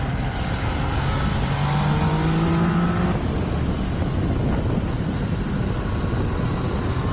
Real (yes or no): yes